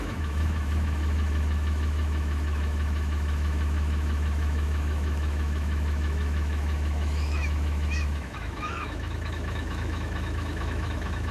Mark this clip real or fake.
fake